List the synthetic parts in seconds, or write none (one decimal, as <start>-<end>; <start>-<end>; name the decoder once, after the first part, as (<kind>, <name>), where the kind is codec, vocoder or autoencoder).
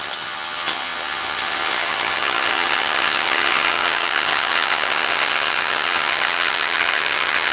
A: 0.0-7.5 (vocoder, HiFi-GAN)